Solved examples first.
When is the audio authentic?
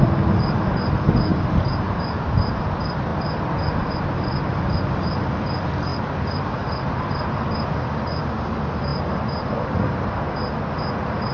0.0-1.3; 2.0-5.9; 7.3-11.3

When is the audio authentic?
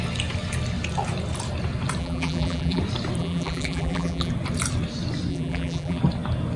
0.0-2.0; 2.8-3.2; 4.3-5.3; 6.0-6.6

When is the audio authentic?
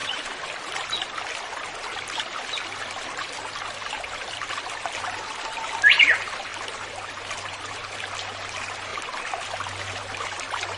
5.0-6.5; 8.1-10.8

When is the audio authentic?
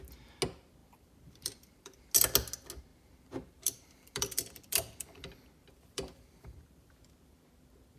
0.0-0.8; 2.0-2.9; 6.9-8.0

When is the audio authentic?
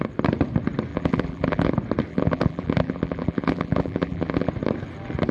0.0-0.9; 1.7-2.1; 4.5-5.3